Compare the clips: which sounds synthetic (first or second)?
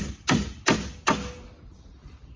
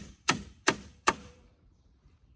second